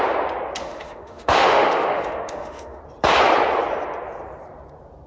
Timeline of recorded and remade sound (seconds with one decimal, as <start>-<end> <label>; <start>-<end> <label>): 0.0-0.6 recorded; 0.6-2.8 remade; 2.8-5.1 recorded

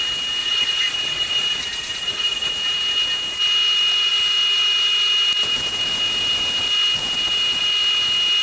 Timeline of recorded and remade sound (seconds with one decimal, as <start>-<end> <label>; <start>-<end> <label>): 0.0-0.4 recorded; 0.4-2.5 remade; 2.5-8.4 recorded

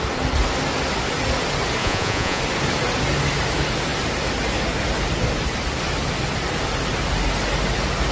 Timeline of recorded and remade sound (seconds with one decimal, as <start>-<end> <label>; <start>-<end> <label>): 0.0-1.8 recorded; 1.8-2.4 remade; 2.4-8.1 recorded